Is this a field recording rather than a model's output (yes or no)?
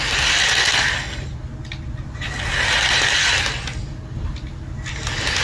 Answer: yes